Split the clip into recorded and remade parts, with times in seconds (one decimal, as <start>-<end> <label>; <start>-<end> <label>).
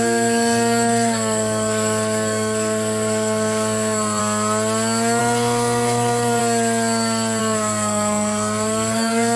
0.0-4.2 remade; 4.2-5.2 recorded; 5.2-6.4 remade; 6.4-7.4 recorded; 7.4-9.4 remade